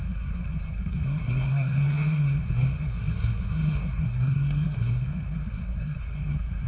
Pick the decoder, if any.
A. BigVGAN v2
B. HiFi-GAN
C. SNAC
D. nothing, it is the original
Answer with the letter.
C